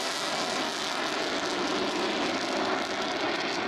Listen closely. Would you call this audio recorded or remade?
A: recorded